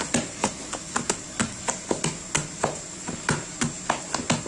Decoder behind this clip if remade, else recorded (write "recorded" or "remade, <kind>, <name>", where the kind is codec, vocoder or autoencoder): recorded